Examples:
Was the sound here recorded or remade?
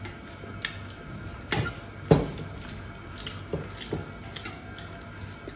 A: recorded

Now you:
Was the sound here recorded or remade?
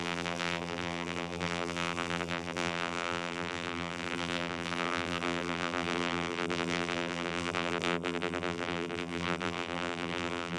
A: remade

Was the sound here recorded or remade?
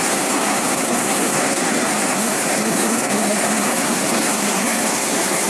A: remade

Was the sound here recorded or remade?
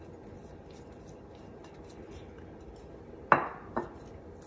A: recorded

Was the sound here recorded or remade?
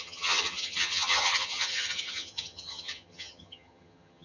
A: remade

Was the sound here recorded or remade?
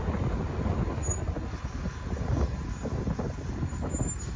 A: recorded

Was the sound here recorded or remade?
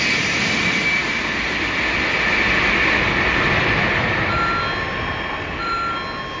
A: recorded